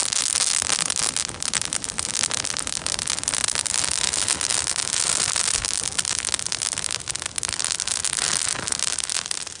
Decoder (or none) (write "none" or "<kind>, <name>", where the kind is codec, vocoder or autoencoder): none